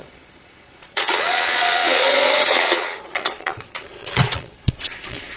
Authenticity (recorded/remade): remade